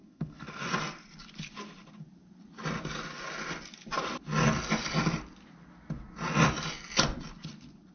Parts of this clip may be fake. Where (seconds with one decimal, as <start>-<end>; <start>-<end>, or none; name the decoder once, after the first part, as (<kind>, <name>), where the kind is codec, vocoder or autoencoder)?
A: 0.0-0.6 (codec, SNAC)